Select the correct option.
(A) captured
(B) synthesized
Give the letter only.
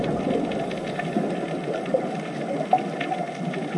A